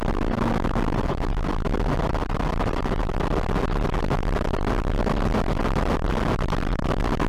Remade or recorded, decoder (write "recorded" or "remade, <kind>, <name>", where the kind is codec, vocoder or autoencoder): recorded